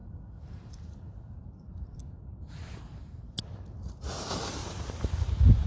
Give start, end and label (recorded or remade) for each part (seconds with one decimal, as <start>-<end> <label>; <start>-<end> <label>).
0.0-3.4 remade; 3.4-4.6 recorded; 4.6-5.7 remade